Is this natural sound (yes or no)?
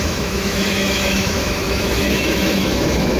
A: no